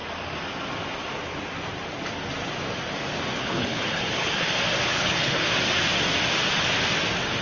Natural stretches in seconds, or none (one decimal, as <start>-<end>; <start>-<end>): 0.0-3.4; 4.5-4.9; 5.4-7.4